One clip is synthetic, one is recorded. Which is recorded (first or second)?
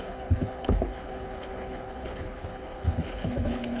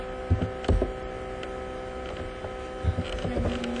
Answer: second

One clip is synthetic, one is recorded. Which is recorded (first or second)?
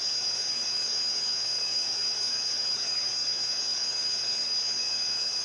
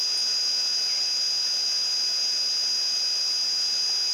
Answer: second